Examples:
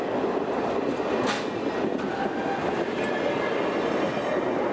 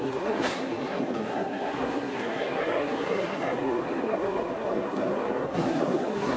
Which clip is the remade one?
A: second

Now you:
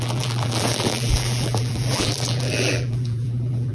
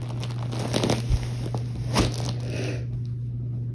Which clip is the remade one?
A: first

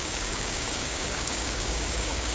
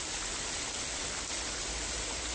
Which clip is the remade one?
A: first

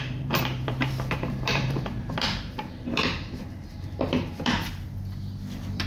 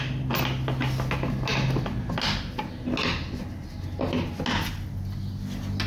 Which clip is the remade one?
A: first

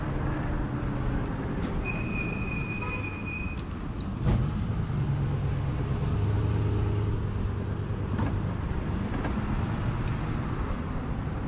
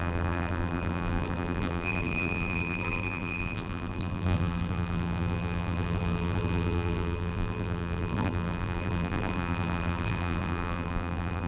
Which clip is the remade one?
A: second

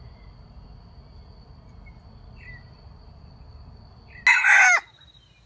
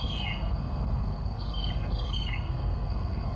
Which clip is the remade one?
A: second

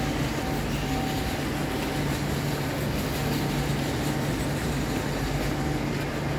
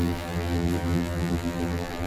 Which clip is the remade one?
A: second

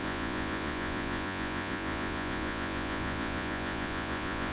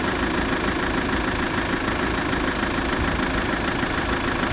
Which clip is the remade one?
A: first